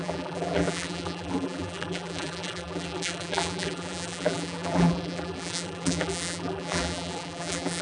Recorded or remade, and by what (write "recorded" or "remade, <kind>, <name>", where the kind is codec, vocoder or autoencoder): remade, vocoder, BigVGAN v2